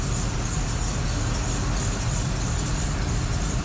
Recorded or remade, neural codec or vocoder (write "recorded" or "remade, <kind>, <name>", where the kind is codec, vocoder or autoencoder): recorded